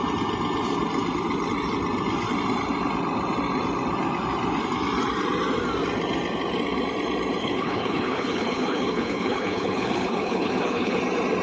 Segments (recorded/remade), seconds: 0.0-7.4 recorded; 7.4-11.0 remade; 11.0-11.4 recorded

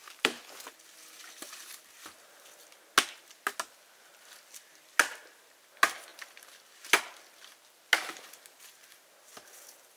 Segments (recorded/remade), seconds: 0.0-0.6 remade; 0.6-6.1 recorded; 6.1-6.8 remade; 6.8-10.0 recorded

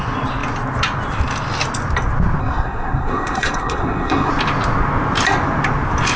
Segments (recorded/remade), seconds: 0.0-2.4 recorded; 2.4-4.3 remade; 4.3-6.2 recorded

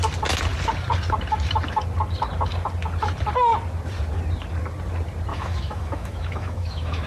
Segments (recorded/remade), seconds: 0.0-5.3 recorded; 5.3-7.1 remade